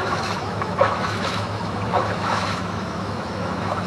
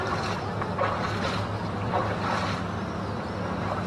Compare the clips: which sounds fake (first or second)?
first